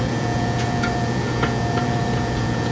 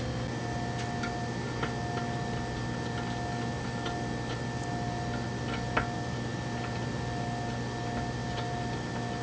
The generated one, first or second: first